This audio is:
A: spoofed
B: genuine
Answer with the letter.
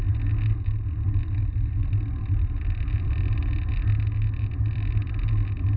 B